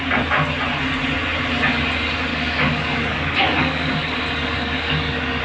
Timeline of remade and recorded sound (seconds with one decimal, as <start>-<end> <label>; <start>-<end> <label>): 0.0-2.3 recorded; 2.3-5.4 remade